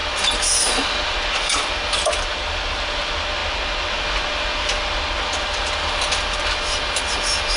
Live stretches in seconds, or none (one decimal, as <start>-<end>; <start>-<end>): 0.0-7.6